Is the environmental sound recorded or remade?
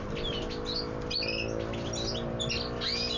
recorded